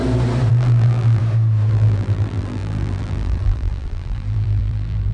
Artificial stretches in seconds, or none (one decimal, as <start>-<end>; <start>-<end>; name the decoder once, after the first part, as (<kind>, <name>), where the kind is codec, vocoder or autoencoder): 0.5-1.2 (vocoder, BigVGAN v2); 1.7-5.1